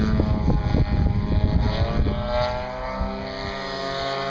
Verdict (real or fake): real